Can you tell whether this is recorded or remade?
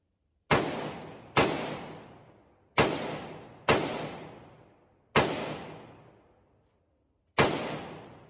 recorded